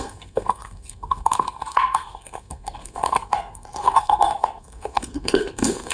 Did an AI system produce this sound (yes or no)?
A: yes